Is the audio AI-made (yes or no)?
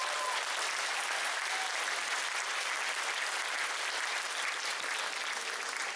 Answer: no